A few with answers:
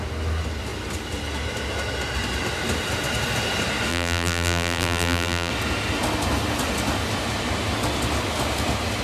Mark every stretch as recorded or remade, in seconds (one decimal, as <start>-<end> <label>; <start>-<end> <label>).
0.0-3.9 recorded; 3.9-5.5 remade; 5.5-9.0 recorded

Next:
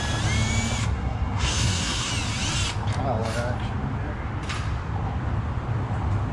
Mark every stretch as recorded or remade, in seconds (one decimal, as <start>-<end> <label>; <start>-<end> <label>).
0.0-0.8 recorded; 0.8-2.1 remade; 2.1-6.3 recorded

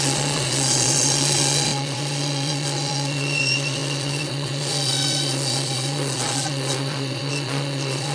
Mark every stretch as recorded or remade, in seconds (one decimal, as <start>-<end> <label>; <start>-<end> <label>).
0.0-8.1 remade

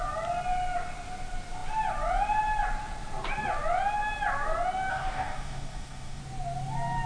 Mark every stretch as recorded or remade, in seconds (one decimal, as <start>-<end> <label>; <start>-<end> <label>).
0.0-4.9 recorded; 4.9-6.2 remade; 6.2-7.1 recorded